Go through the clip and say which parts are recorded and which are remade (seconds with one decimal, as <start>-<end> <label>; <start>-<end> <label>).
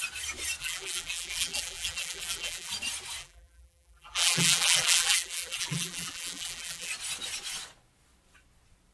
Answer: 0.0-0.6 recorded; 0.6-2.7 remade; 2.7-3.2 recorded; 3.2-6.9 remade; 6.9-8.9 recorded